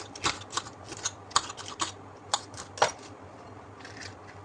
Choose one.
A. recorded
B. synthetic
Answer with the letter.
A